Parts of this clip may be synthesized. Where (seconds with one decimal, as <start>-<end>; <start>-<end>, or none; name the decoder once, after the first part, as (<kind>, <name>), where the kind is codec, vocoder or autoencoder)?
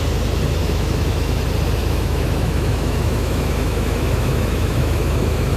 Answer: 0.6-1.4 (autoencoder, DAC-VAE); 1.8-5.6